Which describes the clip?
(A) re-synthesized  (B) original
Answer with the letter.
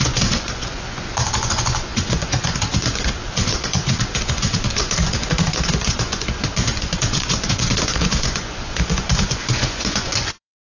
A